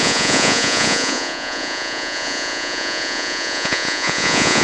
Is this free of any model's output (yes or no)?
no